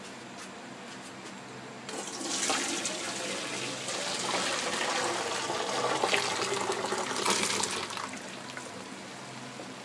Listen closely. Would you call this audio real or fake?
real